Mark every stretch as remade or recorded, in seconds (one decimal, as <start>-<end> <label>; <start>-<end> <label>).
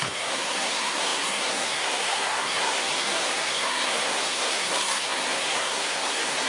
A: 0.0-6.5 remade